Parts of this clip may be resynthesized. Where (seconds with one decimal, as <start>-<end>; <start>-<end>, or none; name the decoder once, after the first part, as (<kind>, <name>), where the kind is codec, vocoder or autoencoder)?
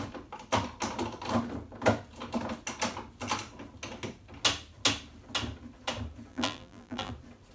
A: 6.3-7.1 (vocoder, BigVGAN v2)